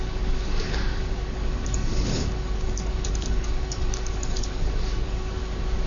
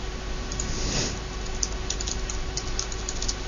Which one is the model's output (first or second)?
first